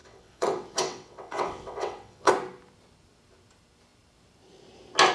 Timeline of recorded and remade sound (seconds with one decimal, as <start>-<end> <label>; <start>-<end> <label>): 0.0-2.3 remade; 2.3-5.1 recorded